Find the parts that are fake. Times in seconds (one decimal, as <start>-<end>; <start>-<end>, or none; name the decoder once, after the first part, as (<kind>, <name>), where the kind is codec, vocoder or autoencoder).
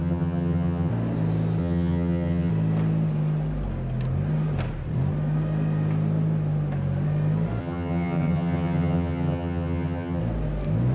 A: 0.0-0.9 (vocoder, HiFi-GAN); 1.6-2.5; 7.6-10.2